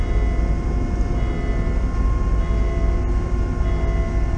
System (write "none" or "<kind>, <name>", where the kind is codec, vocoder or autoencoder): none